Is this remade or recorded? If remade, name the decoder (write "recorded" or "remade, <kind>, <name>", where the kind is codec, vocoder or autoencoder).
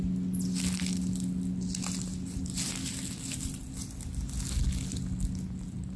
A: recorded